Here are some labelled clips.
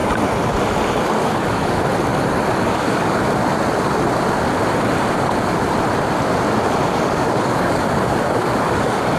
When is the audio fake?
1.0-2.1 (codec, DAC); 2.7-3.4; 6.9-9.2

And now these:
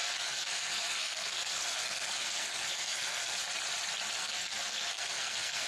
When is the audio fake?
0.0-3.4 (codec, SNAC); 4.2-5.7